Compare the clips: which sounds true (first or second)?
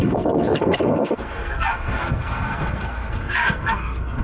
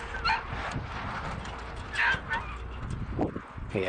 second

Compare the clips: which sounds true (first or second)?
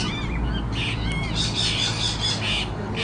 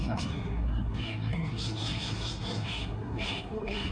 first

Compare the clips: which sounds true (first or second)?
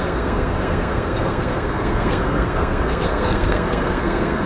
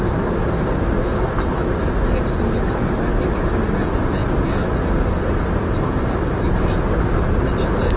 second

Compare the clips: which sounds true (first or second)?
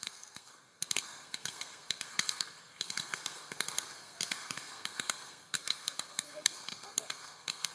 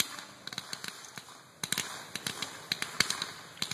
second